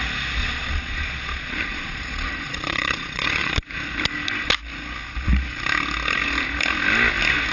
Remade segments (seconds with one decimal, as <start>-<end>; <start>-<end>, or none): 0.4-3.5